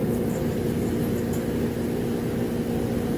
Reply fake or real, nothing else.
real